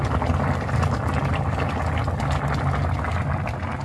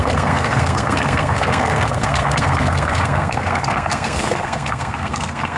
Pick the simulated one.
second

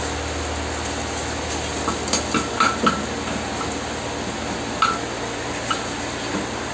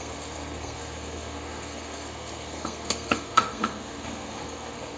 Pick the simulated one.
second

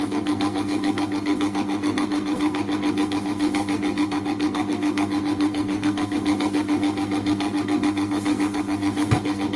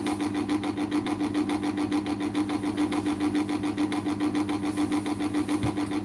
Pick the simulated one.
first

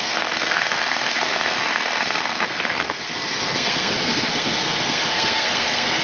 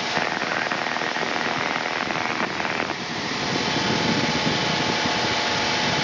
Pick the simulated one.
first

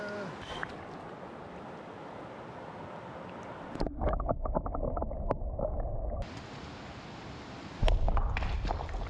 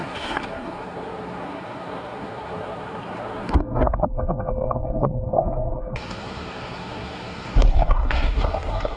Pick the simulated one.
second